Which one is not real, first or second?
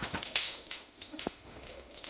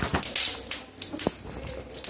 first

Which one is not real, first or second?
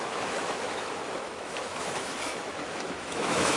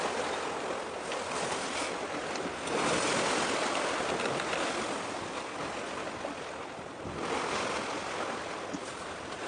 first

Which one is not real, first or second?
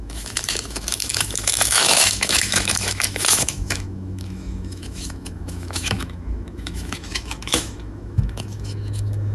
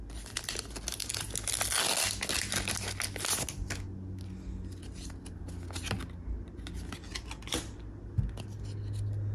first